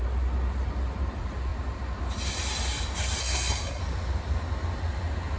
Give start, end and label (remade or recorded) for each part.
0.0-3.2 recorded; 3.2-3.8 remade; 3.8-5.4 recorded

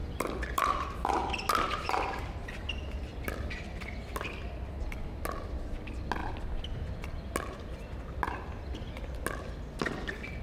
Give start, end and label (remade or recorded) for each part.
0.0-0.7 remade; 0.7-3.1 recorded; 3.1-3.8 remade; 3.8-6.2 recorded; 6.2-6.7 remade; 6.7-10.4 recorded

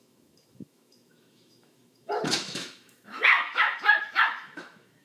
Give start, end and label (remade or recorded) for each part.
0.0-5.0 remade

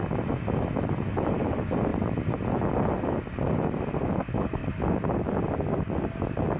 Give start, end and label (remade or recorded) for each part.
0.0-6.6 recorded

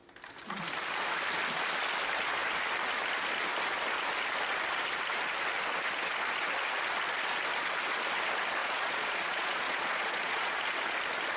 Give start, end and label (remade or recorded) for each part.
0.0-8.6 recorded; 8.6-10.6 remade; 10.6-11.4 recorded

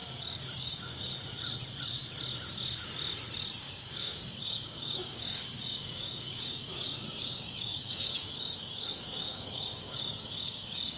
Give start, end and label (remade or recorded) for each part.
0.0-0.5 recorded; 0.5-1.1 remade; 1.1-3.6 recorded; 3.6-11.0 remade

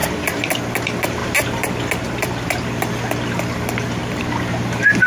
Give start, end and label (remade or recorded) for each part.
0.0-0.5 remade; 0.5-5.1 recorded